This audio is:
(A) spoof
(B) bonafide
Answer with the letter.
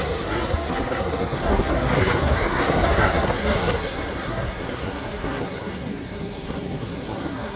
A